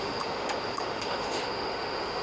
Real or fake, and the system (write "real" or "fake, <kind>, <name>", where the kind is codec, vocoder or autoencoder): fake, autoencoder, DAC-VAE